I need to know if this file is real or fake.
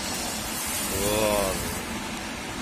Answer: real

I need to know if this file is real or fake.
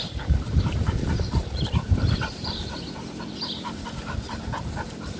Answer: fake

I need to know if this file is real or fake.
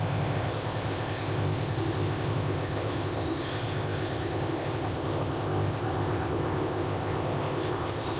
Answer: fake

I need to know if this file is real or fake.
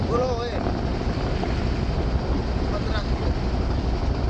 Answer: real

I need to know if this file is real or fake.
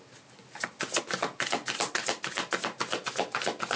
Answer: real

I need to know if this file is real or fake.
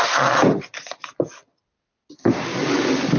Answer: real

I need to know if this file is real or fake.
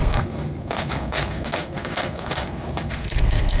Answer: fake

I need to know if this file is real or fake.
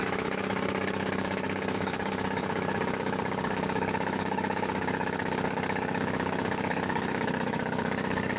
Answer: fake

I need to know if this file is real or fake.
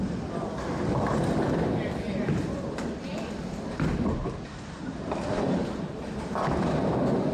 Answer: real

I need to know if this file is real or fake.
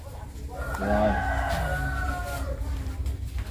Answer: real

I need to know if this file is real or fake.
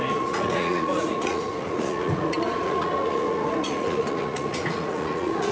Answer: fake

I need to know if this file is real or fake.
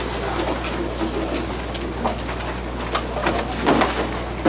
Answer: real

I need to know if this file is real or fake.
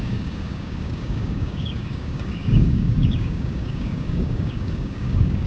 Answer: fake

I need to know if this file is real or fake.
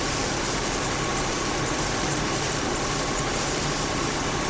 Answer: fake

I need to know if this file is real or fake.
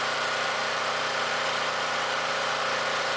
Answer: fake